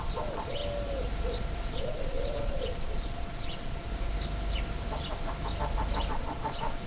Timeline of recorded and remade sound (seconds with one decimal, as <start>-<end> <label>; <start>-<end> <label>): 0.0-0.6 remade; 0.6-1.7 recorded; 1.7-3.9 remade; 3.9-6.1 recorded; 6.1-6.9 remade